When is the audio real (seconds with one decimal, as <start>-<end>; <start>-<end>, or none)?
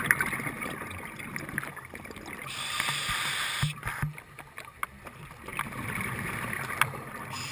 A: 0.0-7.5